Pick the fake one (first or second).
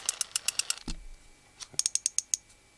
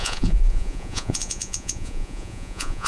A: second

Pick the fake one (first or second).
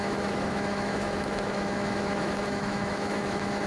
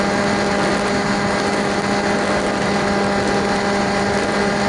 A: first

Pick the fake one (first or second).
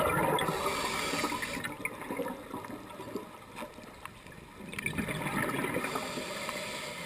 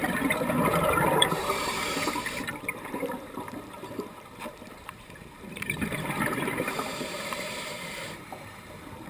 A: second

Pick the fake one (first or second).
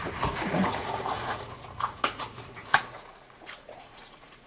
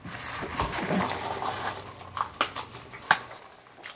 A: first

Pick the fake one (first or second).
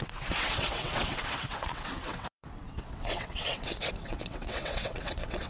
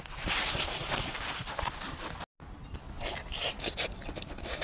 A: first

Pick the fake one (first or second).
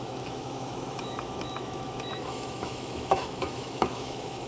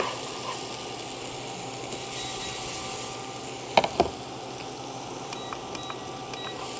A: first